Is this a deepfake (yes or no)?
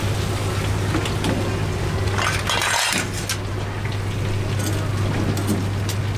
no